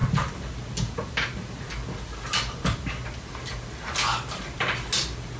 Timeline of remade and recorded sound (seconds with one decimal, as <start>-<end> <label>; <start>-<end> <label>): 0.0-5.4 recorded